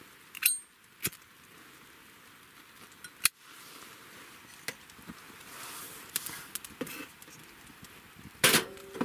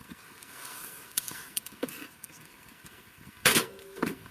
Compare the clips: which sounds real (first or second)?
first